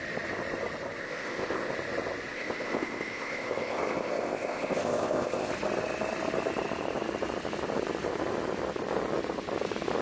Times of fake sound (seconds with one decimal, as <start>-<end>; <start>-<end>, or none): 1.0-1.7; 2.3-5.5